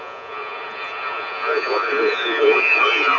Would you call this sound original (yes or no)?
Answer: no